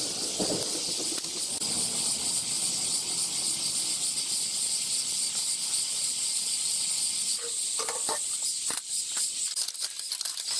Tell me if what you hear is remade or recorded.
recorded